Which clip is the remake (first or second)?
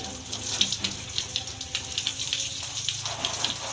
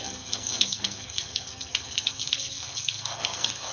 second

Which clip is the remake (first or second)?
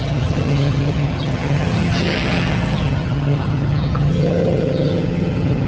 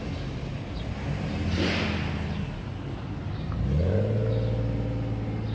first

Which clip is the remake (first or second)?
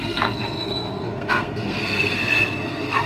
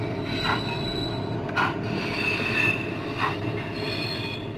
first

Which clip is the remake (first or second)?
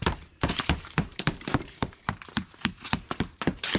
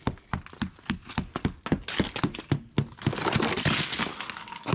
first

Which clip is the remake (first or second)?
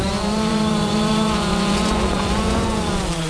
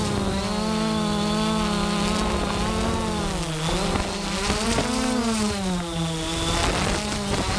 first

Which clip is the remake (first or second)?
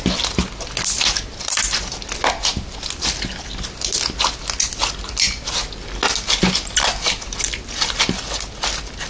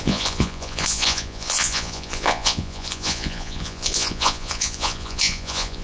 second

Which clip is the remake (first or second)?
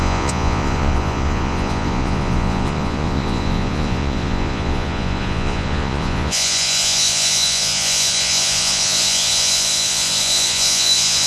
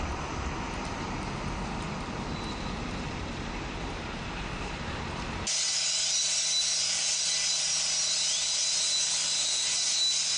first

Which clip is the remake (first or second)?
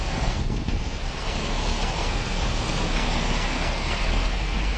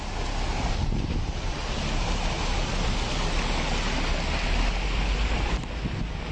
first